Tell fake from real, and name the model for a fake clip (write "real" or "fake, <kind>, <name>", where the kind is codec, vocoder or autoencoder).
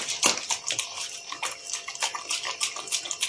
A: real